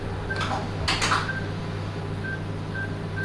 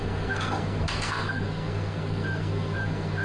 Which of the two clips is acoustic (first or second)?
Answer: first